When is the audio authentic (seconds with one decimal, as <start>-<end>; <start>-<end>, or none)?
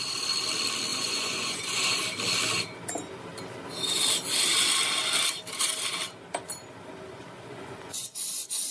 0.0-0.9; 2.0-7.1